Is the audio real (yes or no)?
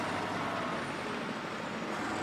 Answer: yes